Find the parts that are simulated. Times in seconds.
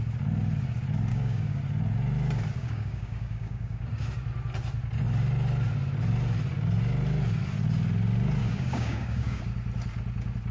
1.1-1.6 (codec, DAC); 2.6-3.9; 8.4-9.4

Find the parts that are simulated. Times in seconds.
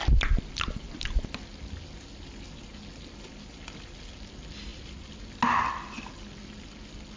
none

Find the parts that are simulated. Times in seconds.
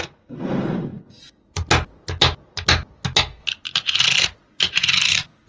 none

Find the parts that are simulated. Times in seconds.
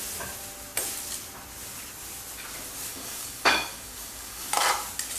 2.9-4.5 (codec, DAC)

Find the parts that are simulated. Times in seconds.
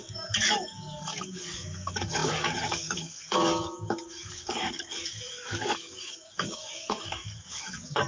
0.0-8.1 (codec, DAC)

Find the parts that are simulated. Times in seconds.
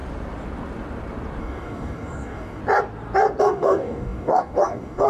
1.4-2.6 (codec, DAC); 3.4-5.1